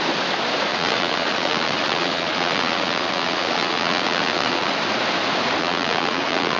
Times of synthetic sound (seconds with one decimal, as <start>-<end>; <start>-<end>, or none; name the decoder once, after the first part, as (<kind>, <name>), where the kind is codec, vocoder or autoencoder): 0.7-4.7 (vocoder, Vocos); 5.6-6.6